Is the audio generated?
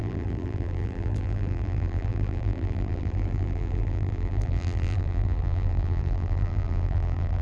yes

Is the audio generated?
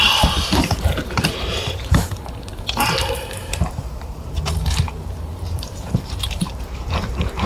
yes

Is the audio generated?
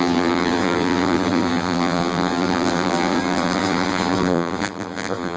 yes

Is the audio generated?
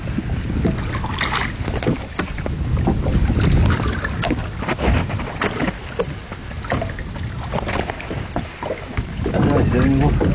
no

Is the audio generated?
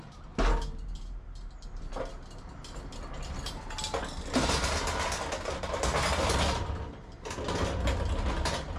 no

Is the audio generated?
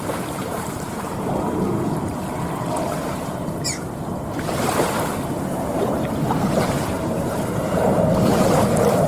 yes